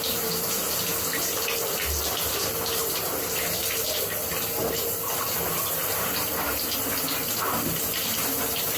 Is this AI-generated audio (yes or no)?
no